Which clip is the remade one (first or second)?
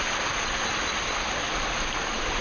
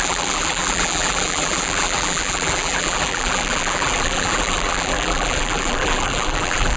second